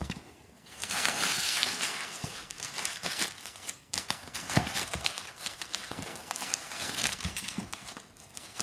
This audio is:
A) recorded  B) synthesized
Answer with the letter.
B